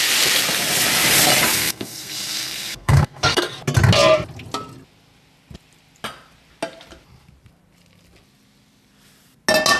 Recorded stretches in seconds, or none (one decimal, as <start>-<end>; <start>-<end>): 0.0-1.5; 3.4-9.8